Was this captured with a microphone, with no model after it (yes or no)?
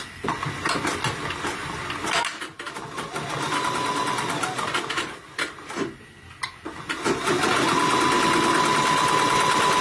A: yes